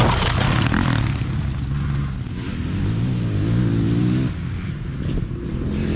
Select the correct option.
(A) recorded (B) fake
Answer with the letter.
A